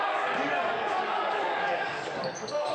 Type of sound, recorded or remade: remade